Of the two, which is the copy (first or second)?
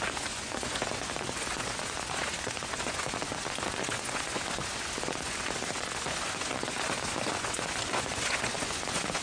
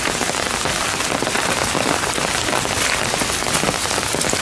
first